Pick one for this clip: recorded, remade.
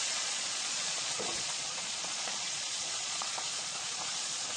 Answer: remade